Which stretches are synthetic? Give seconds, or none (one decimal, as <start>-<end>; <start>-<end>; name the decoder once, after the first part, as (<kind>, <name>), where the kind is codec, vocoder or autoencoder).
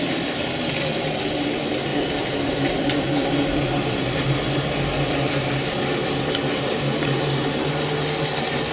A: 1.9-5.5 (vocoder, BigVGAN v2)